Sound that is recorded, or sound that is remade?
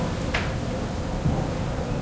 recorded